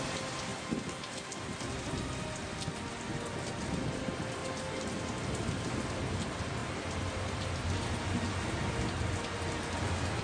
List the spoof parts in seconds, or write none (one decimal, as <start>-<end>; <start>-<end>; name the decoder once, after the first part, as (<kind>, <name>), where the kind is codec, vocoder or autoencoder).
4.4-5.6 (vocoder, BigVGAN v2)